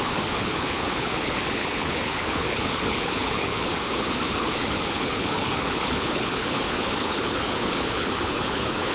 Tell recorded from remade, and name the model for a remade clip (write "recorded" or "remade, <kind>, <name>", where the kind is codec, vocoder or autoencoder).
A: remade, codec, HILCodec